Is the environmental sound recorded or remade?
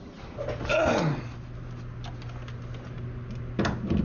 recorded